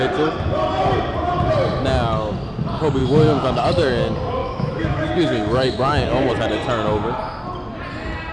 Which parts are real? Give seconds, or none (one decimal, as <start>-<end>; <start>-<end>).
0.0-3.0; 3.6-4.4; 6.3-8.3